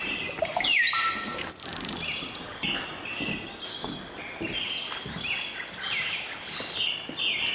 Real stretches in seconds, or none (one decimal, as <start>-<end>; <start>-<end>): 0.0-7.5